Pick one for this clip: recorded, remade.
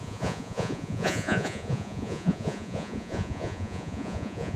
remade